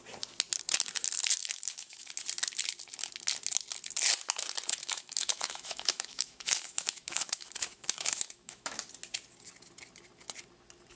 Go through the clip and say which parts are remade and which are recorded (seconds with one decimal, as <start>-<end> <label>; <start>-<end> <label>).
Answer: 0.0-1.4 recorded; 1.4-2.1 remade; 2.1-4.8 recorded; 4.8-8.8 remade; 8.8-11.0 recorded